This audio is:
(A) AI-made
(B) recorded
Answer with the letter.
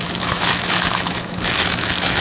A